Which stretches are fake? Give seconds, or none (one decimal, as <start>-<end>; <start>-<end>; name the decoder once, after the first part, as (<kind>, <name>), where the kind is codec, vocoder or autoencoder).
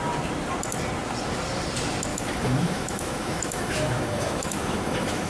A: 2.1-5.3 (autoencoder, DAC-VAE)